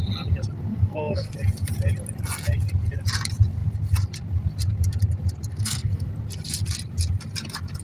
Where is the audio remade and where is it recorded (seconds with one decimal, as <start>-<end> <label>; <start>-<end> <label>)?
0.0-0.7 recorded; 0.7-1.3 remade; 1.3-5.5 recorded; 5.5-6.1 remade; 6.1-7.8 recorded